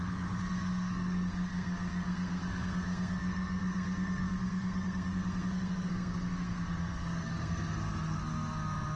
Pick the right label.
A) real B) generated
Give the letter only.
B